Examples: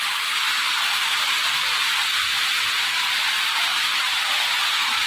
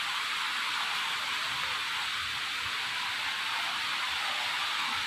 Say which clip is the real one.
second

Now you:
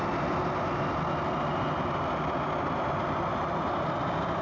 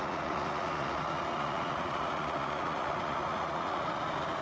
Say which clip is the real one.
first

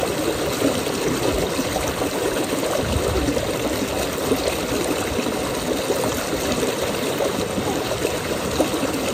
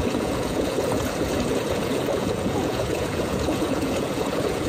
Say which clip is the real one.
first